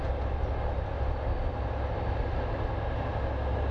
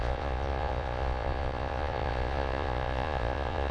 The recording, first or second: first